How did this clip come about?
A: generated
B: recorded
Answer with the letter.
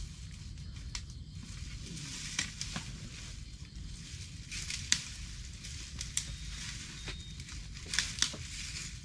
B